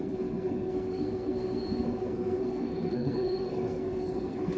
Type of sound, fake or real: fake